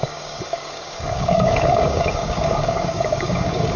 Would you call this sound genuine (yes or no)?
no